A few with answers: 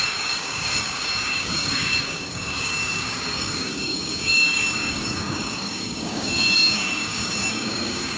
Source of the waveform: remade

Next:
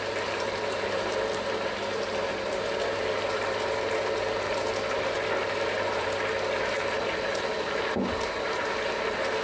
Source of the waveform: recorded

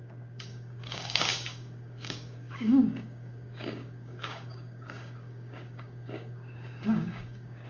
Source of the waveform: remade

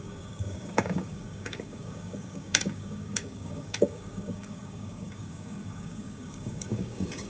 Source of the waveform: remade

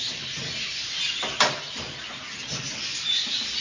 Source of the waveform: recorded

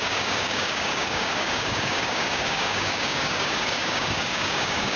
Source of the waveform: remade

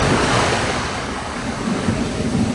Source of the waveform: remade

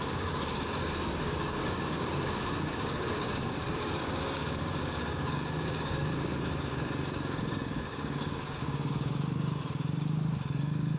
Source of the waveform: remade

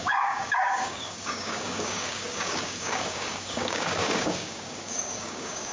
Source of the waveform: remade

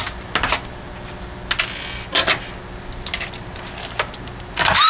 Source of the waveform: recorded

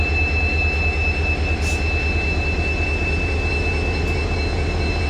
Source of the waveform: recorded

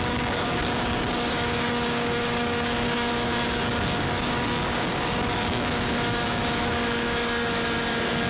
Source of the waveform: remade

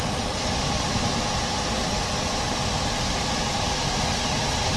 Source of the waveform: recorded